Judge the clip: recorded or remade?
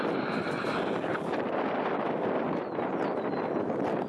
recorded